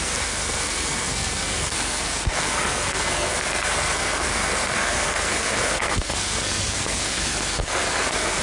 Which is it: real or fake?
fake